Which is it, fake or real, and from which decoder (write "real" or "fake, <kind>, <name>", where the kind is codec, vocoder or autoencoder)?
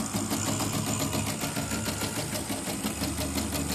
real